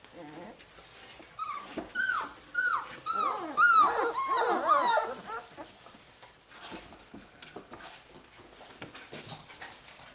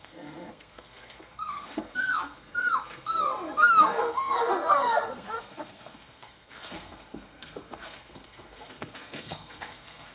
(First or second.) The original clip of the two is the first